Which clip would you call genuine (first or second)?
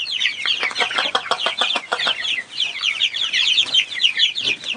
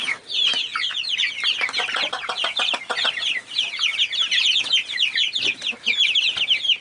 second